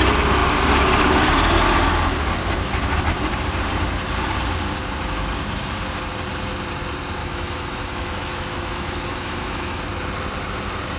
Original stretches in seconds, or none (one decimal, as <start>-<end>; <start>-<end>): 0.0-7.2; 9.8-11.0